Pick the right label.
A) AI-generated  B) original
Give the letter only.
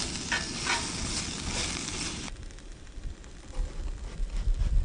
B